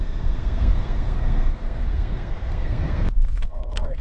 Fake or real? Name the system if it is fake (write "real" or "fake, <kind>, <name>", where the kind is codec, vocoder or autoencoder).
fake, codec, SNAC